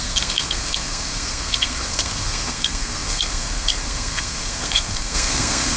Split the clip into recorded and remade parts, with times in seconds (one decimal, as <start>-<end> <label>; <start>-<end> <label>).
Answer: 0.0-5.8 remade